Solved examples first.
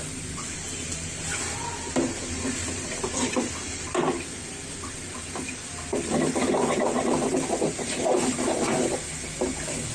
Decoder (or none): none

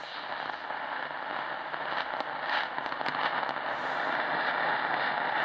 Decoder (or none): none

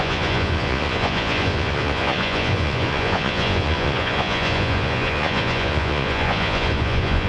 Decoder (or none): vocoder, Vocos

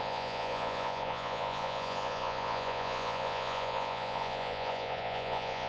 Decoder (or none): vocoder, Vocos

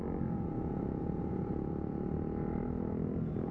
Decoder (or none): none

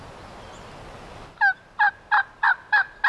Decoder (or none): none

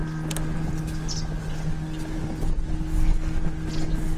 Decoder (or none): none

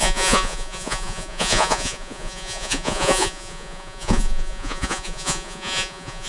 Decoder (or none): vocoder, Vocos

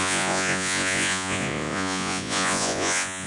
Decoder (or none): vocoder, Vocos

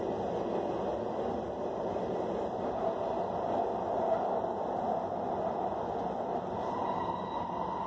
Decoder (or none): none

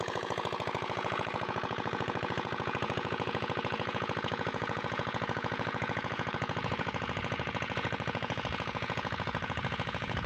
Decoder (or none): vocoder, Vocos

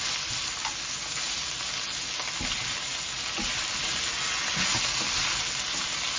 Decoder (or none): none